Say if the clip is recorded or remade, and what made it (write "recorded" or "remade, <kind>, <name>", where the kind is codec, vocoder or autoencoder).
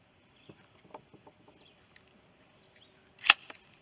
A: recorded